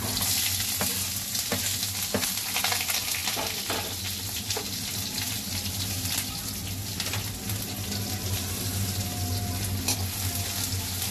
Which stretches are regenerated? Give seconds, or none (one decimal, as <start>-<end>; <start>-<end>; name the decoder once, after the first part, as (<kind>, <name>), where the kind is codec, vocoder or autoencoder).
none